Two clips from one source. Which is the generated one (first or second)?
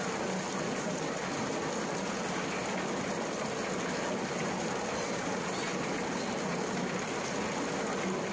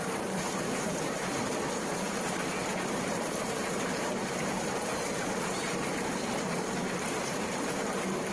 second